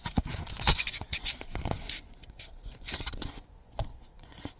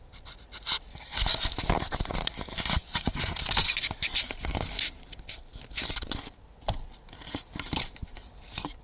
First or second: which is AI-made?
first